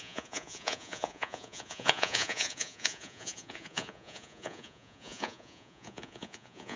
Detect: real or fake fake